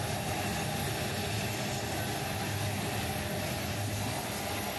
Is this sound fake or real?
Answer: real